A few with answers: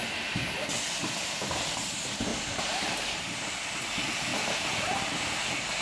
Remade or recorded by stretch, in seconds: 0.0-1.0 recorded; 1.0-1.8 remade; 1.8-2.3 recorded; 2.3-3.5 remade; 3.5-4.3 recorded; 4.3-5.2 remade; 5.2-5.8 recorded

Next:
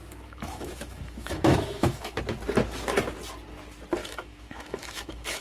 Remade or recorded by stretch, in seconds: 0.0-2.2 remade; 2.2-4.0 recorded; 4.0-5.4 remade

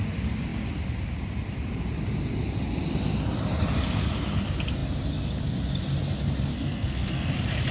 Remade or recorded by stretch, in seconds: 0.0-6.5 recorded; 6.5-7.3 remade; 7.3-7.7 recorded

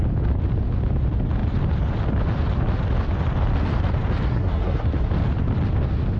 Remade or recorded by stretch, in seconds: 0.0-4.3 recorded; 4.3-5.1 remade; 5.1-6.2 recorded

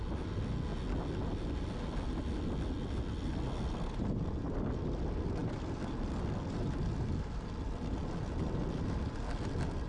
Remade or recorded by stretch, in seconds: 0.0-9.9 recorded

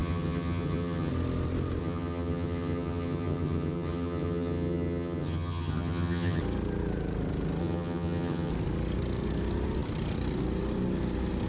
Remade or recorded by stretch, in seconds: 0.0-1.1 remade; 1.1-1.8 recorded; 1.8-6.4 remade; 6.4-7.6 recorded; 7.6-8.5 remade; 8.5-11.5 recorded

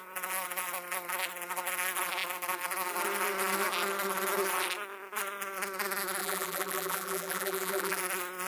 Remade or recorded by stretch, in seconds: 0.0-6.2 recorded; 6.2-8.0 remade; 8.0-8.5 recorded